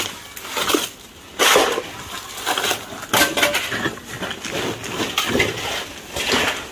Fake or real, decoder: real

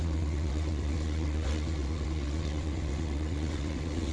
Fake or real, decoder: fake, vocoder, WaveNeXt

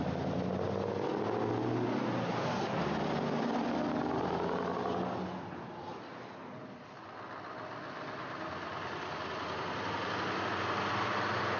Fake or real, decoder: real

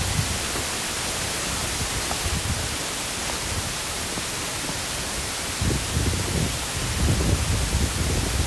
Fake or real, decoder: real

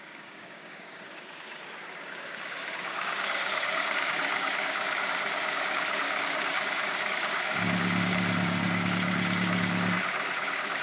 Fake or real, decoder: fake, codec, DAC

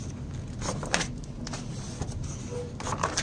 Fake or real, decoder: real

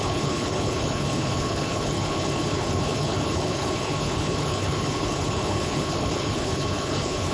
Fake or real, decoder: fake, codec, HILCodec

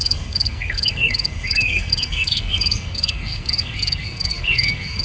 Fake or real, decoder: fake, codec, SNAC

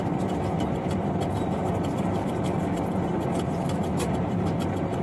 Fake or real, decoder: fake, vocoder, BigVGAN v2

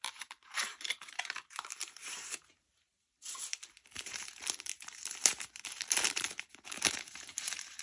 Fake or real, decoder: fake, vocoder, BigVGAN v2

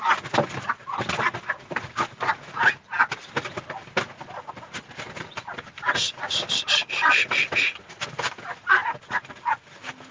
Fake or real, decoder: real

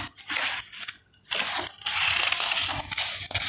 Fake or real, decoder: real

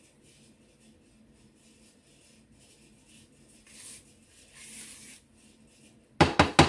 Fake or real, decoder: real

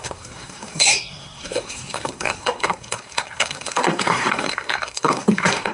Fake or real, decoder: fake, codec, SNAC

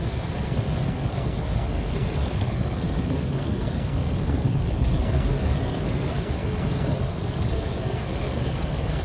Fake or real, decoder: fake, codec, SNAC